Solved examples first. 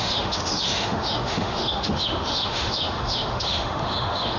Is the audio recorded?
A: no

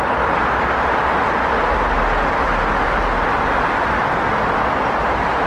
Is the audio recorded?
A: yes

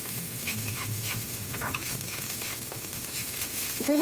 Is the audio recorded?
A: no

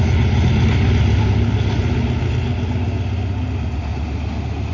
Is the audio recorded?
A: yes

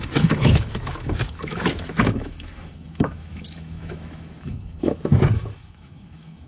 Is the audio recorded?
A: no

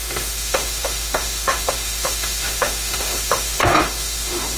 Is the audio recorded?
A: no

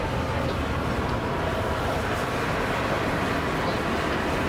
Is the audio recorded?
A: yes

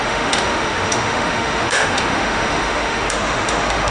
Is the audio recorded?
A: no